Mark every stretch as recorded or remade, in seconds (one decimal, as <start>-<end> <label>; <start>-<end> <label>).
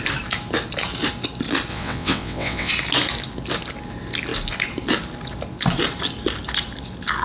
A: 0.0-1.7 recorded; 1.7-2.7 remade; 2.7-7.2 recorded